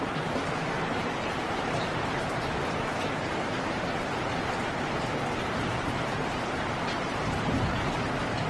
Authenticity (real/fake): fake